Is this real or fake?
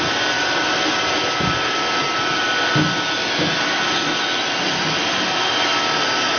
real